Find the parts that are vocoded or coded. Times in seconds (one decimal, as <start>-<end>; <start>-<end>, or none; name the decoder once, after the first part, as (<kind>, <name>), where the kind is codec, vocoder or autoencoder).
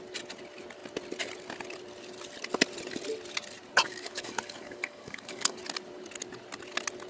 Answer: 3.8-5.6 (codec, DAC)